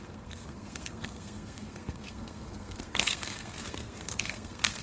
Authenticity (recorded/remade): remade